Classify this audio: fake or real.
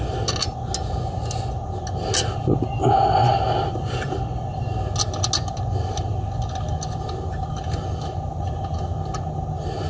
real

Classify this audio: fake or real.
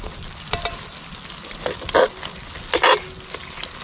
real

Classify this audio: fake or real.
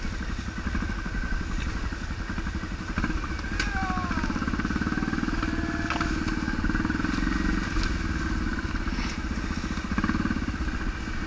real